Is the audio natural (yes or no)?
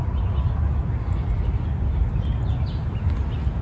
yes